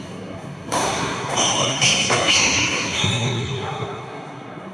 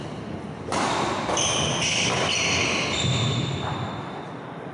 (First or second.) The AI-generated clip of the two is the first